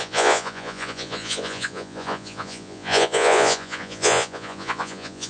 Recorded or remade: remade